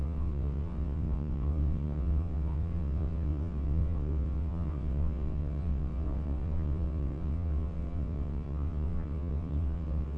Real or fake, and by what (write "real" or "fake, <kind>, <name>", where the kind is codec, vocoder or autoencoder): fake, vocoder, WaveNeXt